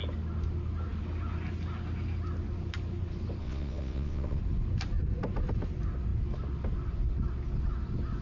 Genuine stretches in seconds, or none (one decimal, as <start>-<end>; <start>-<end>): 0.0-3.4; 4.4-8.2